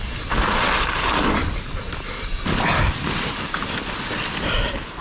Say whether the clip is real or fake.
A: real